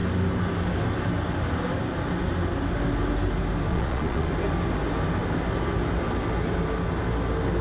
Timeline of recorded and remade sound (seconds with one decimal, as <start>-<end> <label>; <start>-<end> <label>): 0.0-3.7 recorded; 3.7-4.3 remade; 4.3-7.6 recorded